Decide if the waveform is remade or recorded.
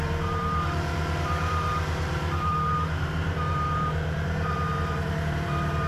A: remade